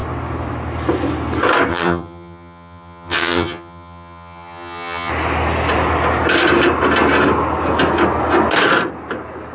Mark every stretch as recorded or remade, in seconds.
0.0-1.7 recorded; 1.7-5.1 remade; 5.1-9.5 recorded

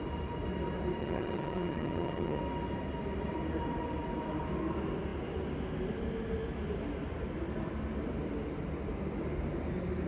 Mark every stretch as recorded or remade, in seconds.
0.0-1.0 recorded; 1.0-2.4 remade; 2.4-10.1 recorded